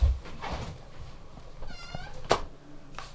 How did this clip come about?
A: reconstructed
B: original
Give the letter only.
B